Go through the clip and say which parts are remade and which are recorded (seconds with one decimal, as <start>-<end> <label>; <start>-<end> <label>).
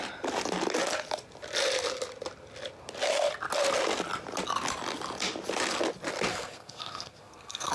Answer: 0.0-6.3 recorded; 6.3-7.7 remade